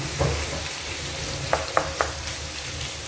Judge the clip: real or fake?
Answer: real